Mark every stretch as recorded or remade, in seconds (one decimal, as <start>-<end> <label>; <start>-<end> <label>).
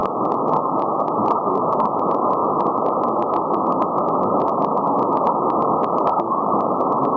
0.0-2.4 recorded; 2.4-5.3 remade; 5.3-7.2 recorded